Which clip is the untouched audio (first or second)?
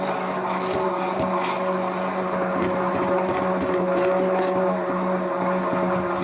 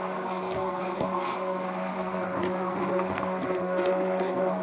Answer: first